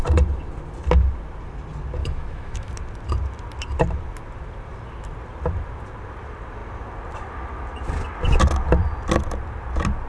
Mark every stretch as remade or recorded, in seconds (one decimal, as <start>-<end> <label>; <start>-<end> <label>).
0.0-2.0 recorded; 2.0-2.7 remade; 2.7-10.1 recorded